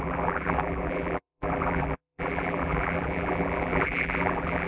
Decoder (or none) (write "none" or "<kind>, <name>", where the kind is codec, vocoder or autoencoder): vocoder, BigVGAN v2